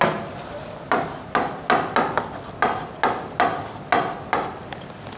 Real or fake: real